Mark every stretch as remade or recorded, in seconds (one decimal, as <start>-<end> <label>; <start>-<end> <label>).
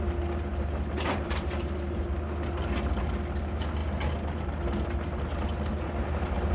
0.0-0.5 recorded; 0.5-2.0 remade; 2.0-6.5 recorded